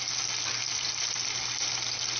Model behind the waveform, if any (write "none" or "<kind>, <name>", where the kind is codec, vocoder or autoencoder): none